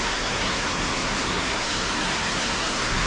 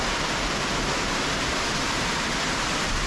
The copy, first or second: first